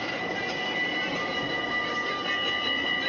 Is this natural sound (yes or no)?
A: yes